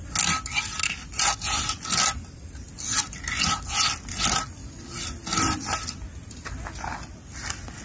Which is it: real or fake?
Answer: real